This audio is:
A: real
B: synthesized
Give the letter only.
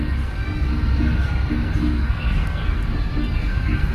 B